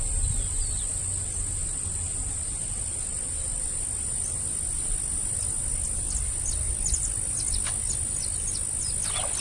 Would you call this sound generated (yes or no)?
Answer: no